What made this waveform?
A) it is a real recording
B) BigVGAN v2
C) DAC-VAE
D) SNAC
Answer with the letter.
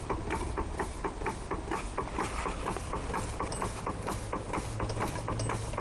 A